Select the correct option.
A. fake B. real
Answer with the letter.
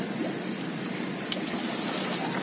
B